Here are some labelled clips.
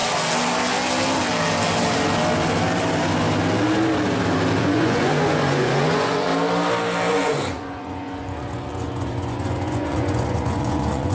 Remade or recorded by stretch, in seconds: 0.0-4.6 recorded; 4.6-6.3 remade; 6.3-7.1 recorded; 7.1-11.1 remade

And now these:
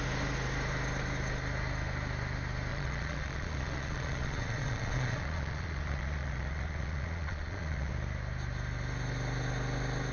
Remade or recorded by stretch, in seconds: 0.0-2.7 recorded; 2.7-7.9 remade; 7.9-10.1 recorded

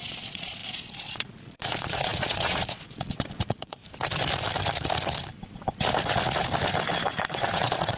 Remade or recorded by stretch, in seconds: 0.0-3.8 remade; 3.8-7.3 recorded; 7.3-8.0 remade